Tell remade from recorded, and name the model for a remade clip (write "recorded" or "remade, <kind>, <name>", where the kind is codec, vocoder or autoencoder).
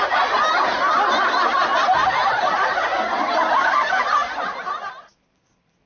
recorded